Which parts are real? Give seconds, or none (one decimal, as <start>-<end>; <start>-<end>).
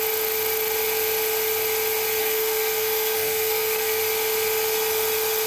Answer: 0.0-2.2; 4.0-5.5